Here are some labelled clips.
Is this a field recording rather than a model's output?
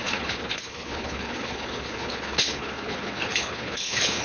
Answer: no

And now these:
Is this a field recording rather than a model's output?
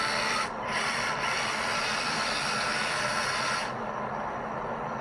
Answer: yes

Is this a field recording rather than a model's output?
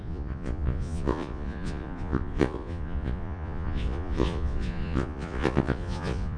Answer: no